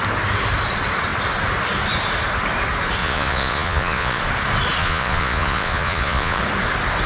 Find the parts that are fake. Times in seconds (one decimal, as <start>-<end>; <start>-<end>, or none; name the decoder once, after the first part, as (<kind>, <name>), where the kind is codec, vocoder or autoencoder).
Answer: 3.0-4.2 (vocoder, Vocos); 4.8-6.4